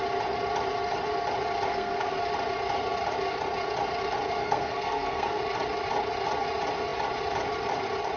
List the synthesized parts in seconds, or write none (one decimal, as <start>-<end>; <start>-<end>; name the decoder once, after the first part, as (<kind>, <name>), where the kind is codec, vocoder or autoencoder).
1.7-2.2 (codec, SNAC); 4.4-5.4